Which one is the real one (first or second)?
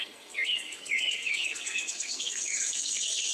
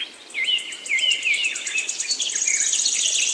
second